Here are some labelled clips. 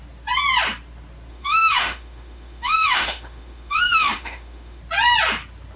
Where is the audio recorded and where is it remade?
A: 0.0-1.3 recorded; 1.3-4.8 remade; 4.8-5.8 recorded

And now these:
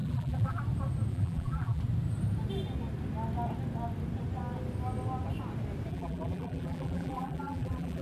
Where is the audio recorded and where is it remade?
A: 0.0-0.6 remade; 0.6-1.1 recorded; 1.1-1.8 remade; 1.8-5.9 recorded; 5.9-8.0 remade

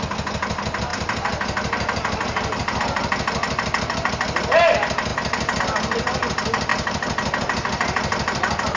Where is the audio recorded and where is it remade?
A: 0.0-0.9 recorded; 0.9-2.8 remade; 2.8-5.1 recorded; 5.1-5.6 remade; 5.6-6.7 recorded; 6.7-8.8 remade

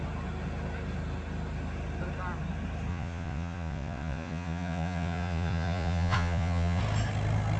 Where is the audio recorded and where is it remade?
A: 0.0-2.9 recorded; 2.9-6.8 remade; 6.8-7.6 recorded